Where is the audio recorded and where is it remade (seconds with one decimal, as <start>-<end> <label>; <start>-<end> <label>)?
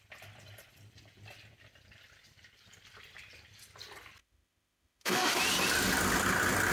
0.0-4.2 recorded; 4.2-5.4 remade; 5.4-6.7 recorded